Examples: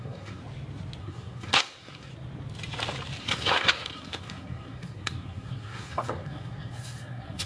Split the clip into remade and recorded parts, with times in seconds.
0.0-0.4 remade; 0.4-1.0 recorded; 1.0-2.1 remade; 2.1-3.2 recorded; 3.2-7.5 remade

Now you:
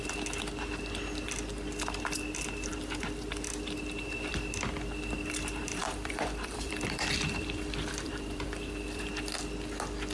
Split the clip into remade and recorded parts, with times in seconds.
0.0-5.8 recorded; 5.8-9.1 remade; 9.1-10.1 recorded

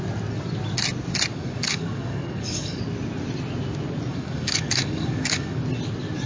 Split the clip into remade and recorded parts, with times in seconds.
0.0-1.3 recorded; 1.3-2.8 remade; 2.8-4.1 recorded; 4.1-5.6 remade; 5.6-6.3 recorded

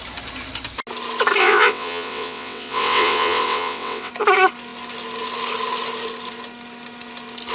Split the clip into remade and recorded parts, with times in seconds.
0.0-1.4 recorded; 1.4-4.1 remade; 4.1-7.5 recorded

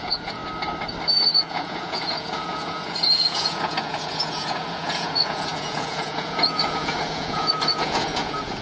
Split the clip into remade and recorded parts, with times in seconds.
0.0-0.4 remade; 0.4-1.3 recorded; 1.3-8.6 remade

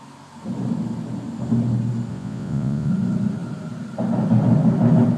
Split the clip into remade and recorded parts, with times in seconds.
0.0-2.1 recorded; 2.1-2.9 remade; 2.9-5.2 recorded

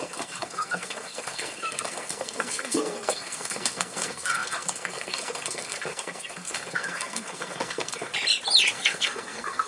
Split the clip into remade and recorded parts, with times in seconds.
0.0-8.1 remade; 8.1-8.7 recorded; 8.7-9.7 remade

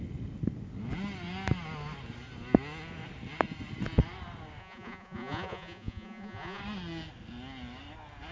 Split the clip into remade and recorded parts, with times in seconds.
0.0-4.6 recorded; 4.6-6.6 remade; 6.6-8.3 recorded